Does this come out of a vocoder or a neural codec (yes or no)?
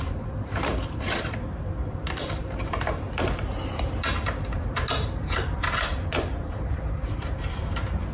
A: yes